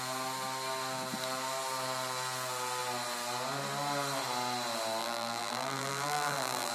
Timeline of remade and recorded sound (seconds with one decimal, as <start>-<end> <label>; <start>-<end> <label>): 0.0-5.0 recorded; 5.0-6.7 remade